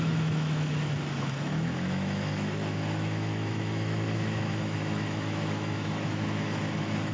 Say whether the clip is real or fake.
fake